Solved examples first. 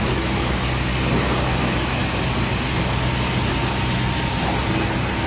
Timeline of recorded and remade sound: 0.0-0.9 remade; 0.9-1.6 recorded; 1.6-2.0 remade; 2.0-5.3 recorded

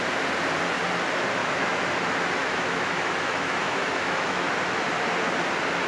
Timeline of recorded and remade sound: 0.0-1.4 recorded; 1.4-1.9 remade; 1.9-2.4 recorded; 2.4-4.5 remade; 4.5-5.9 recorded

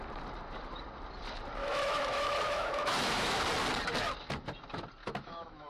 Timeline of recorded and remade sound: 0.0-1.6 recorded; 1.6-3.4 remade; 3.4-5.0 recorded; 5.0-5.7 remade